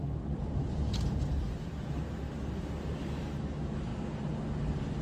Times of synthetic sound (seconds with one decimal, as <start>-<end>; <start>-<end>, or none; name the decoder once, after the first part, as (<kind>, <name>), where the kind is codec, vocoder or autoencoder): 3.0-3.9 (autoencoder, DAC-VAE)